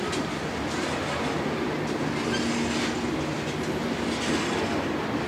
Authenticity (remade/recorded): recorded